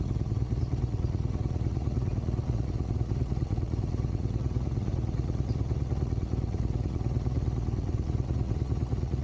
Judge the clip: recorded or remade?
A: remade